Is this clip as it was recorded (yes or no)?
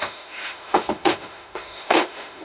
no